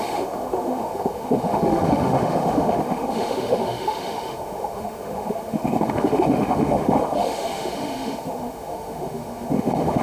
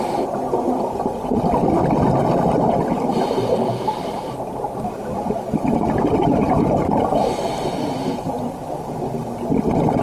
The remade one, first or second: first